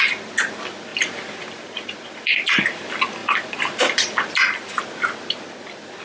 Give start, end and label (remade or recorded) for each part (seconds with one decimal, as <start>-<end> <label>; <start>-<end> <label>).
0.0-0.9 recorded; 0.9-2.6 remade; 2.6-3.2 recorded; 3.2-4.3 remade; 4.3-6.0 recorded